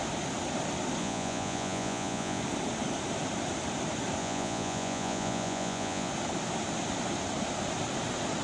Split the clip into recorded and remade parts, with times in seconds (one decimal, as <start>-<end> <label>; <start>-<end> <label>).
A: 0.0-1.0 recorded; 1.0-2.4 remade; 2.4-4.2 recorded; 4.2-6.1 remade; 6.1-8.4 recorded